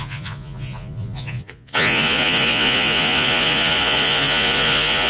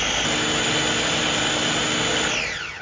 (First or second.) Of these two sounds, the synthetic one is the first